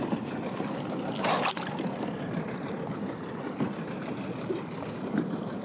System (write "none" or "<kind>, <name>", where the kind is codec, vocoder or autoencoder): none